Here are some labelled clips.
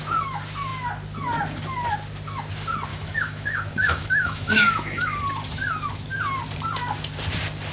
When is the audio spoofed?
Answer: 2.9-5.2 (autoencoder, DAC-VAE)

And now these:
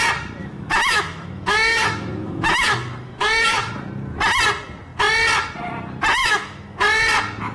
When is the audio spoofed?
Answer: 0.4-3.7 (autoencoder, DAC-VAE); 6.2-6.8

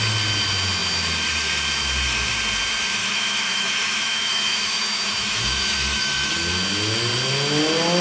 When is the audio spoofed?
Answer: 3.0-6.3 (autoencoder, DAC-VAE)

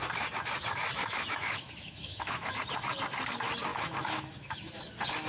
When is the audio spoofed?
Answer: 1.0-2.6 (autoencoder, DAC-VAE); 3.7-4.8

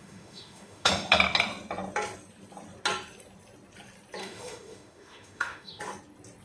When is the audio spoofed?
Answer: 0.0-0.9 (autoencoder, DAC-VAE); 4.2-5.8

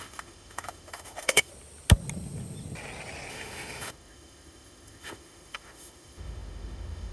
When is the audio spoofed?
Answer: 0.0-1.5 (autoencoder, DAC-VAE); 3.3-7.1